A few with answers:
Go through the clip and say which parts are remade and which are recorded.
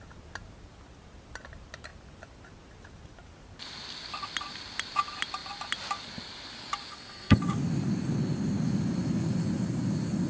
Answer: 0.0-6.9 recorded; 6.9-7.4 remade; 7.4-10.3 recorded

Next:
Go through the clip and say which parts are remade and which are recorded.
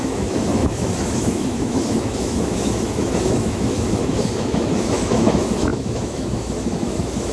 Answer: 0.0-7.3 remade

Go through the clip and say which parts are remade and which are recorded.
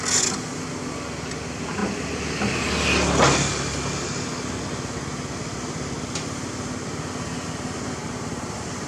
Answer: 0.0-8.0 recorded; 8.0-8.9 remade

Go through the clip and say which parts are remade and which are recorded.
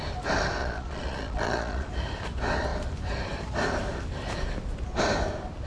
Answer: 0.0-0.6 recorded; 0.6-1.9 remade; 1.9-5.7 recorded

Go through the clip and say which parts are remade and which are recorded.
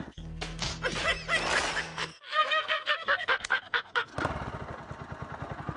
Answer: 0.0-0.7 remade; 0.7-1.8 recorded; 1.8-4.1 remade; 4.1-5.8 recorded